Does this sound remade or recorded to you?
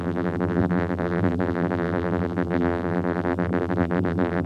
remade